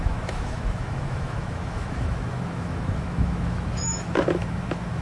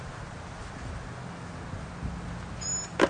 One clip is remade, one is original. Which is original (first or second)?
second